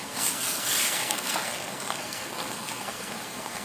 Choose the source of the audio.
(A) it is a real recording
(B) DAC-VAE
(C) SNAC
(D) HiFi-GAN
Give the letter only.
C